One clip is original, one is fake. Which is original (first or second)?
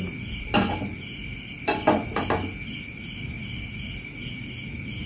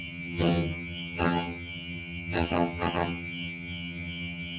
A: first